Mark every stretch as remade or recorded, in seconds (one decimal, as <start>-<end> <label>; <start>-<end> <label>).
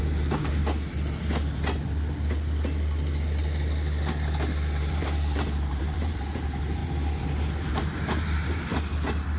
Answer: 0.0-0.6 remade; 0.6-4.9 recorded; 4.9-6.8 remade; 6.8-7.7 recorded; 7.7-8.7 remade; 8.7-9.4 recorded